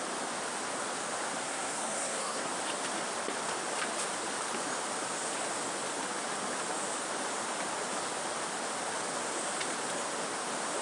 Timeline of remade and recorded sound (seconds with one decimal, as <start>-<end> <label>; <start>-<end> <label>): 0.0-1.4 recorded; 1.4-2.5 remade; 2.5-10.8 recorded